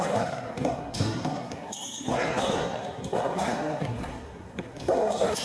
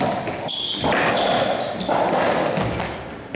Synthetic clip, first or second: first